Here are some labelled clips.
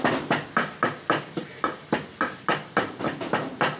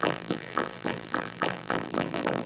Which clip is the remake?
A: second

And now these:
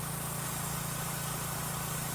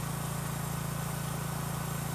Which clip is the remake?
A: first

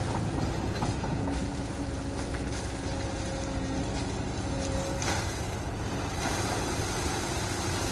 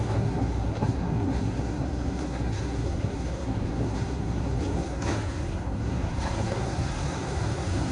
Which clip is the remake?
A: second